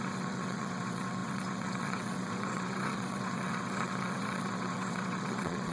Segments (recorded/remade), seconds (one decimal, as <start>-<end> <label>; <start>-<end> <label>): 0.0-5.7 remade